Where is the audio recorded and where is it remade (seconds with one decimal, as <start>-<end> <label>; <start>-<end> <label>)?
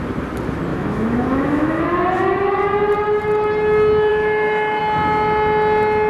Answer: 0.0-0.7 recorded; 0.7-1.8 remade; 1.8-4.1 recorded; 4.1-4.8 remade; 4.8-6.1 recorded